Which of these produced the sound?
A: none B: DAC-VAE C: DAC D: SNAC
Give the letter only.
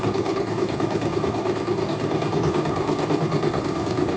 C